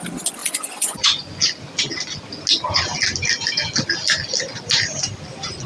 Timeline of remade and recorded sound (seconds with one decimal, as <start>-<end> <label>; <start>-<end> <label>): 0.0-0.4 recorded; 0.4-1.4 remade; 1.4-5.7 recorded